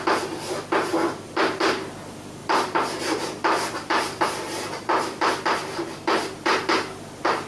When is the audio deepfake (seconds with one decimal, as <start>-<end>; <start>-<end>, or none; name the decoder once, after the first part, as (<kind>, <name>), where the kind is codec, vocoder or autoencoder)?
2.4-5.9 (vocoder, BigVGAN v2)